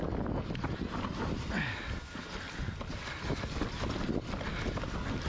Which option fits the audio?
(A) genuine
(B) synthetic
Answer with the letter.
A